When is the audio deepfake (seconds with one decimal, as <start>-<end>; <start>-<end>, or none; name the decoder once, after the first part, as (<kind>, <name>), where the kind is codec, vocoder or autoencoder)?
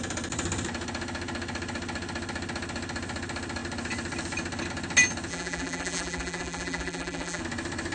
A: 5.3-7.4 (vocoder, BigVGAN v2)